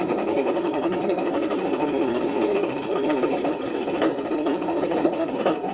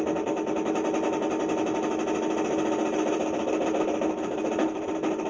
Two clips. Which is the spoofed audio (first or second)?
first